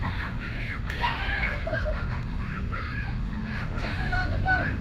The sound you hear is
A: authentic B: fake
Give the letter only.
B